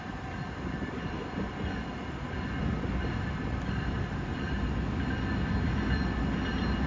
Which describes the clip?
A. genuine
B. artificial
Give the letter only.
A